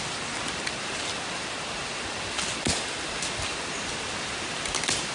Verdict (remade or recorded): recorded